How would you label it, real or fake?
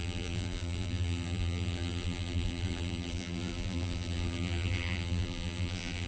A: fake